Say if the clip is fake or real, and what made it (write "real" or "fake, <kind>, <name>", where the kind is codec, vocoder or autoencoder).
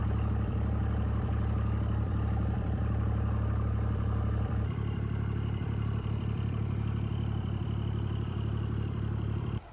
fake, vocoder, BigVGAN v2